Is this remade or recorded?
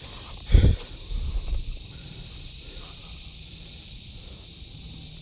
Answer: remade